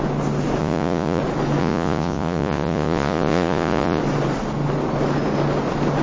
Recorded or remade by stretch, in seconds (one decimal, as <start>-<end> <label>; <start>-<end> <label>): 0.0-0.6 recorded; 0.6-1.2 remade; 1.2-1.6 recorded; 1.6-4.0 remade; 4.0-6.0 recorded